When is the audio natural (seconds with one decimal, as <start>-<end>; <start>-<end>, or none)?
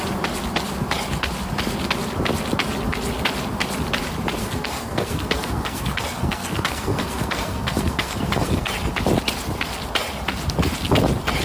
0.0-4.4; 8.7-11.4